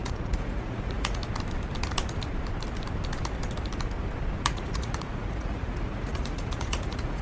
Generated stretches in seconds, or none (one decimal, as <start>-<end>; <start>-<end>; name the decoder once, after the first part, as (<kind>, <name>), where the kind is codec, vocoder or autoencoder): 0.0-1.2 (vocoder, Vocos); 4.4-7.2